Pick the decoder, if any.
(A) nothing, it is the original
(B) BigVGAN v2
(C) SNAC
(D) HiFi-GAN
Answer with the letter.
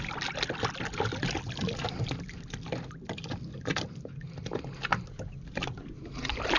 A